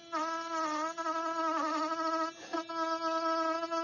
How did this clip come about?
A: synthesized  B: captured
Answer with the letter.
B